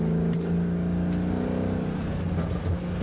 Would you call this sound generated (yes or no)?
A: no